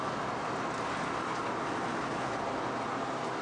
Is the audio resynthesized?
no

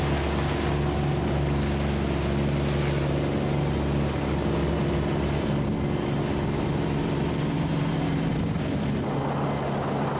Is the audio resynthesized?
no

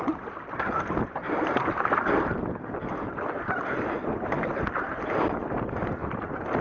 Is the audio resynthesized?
no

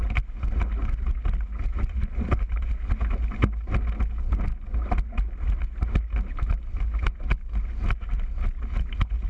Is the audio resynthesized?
no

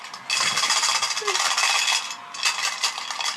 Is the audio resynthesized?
no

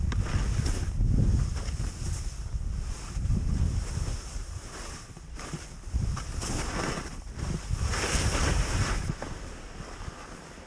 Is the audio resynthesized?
no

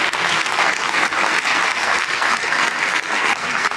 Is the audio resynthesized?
yes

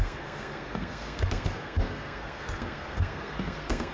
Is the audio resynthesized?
yes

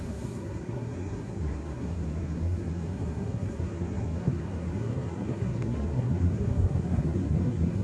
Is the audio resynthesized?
yes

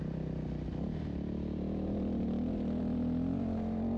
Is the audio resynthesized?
no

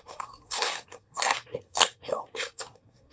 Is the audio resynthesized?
yes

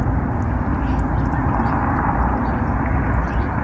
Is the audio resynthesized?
no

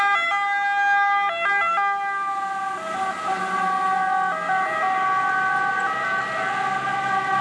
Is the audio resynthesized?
no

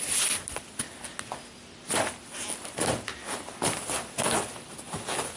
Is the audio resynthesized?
no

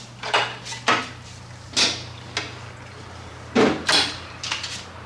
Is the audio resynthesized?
no